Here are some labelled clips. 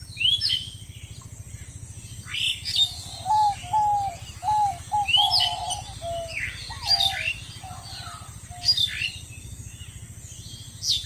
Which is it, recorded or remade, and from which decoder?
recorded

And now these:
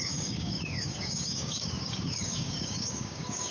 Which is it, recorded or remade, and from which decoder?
remade, codec, DAC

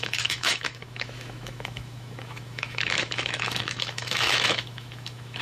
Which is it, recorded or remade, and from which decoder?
remade, autoencoder, DAC-VAE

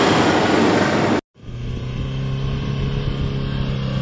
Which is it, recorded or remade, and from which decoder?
recorded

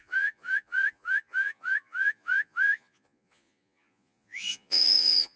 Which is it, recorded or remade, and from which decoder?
remade, vocoder, Vocos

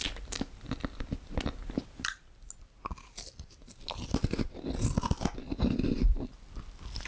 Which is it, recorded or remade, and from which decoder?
recorded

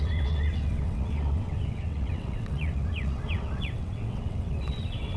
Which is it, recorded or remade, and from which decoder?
remade, vocoder, WaveNeXt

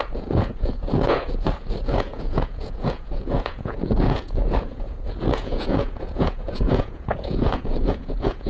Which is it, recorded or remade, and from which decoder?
remade, vocoder, Vocos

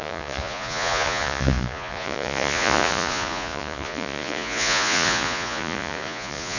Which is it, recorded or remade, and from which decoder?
remade, vocoder, Vocos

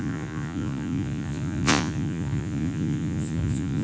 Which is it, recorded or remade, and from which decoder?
remade, vocoder, Vocos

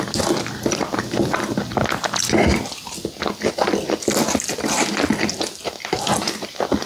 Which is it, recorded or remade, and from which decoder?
recorded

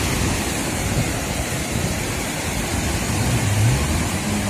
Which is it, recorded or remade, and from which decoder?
recorded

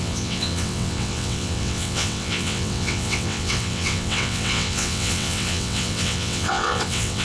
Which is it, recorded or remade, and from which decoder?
remade, vocoder, WaveNeXt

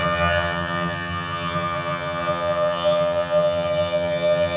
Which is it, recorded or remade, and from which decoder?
remade, vocoder, HiFi-GAN